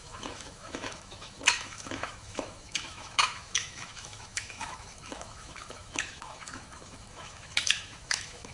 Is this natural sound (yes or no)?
no